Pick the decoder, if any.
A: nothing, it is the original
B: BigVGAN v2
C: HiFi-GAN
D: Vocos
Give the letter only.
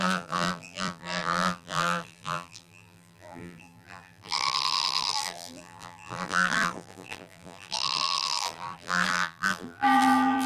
B